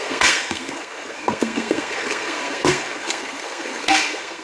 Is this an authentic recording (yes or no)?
no